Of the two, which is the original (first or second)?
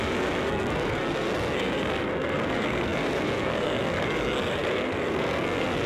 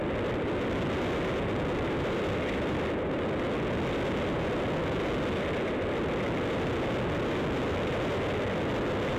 second